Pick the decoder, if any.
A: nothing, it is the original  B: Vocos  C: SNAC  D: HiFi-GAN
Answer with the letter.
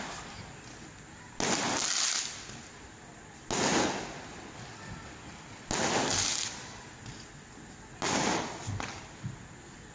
A